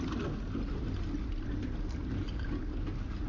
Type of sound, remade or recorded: recorded